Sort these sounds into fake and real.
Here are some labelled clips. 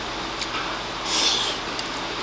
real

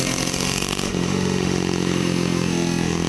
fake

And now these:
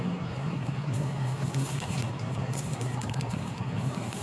fake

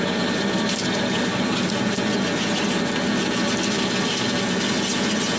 real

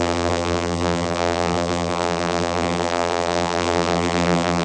fake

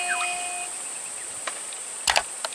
real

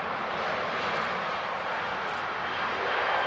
real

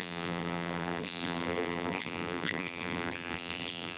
fake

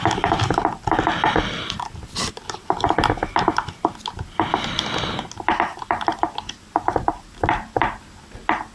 real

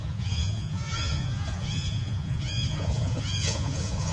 fake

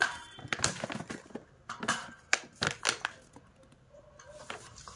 real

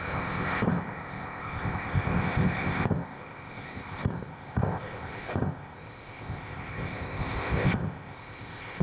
fake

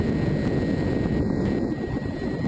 real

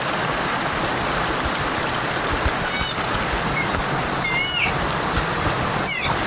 real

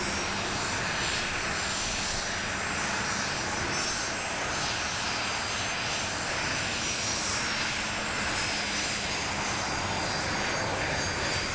real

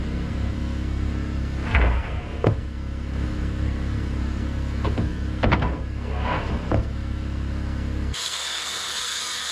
fake